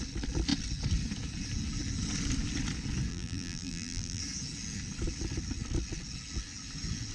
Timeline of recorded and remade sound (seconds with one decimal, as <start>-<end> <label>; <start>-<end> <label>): 0.0-3.1 recorded; 3.1-4.2 remade; 4.2-7.1 recorded